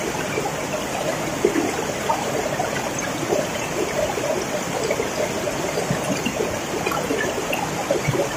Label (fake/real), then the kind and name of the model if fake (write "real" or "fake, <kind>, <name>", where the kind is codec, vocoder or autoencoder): real